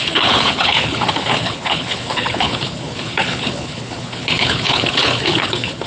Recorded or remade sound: remade